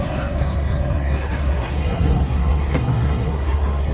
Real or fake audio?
fake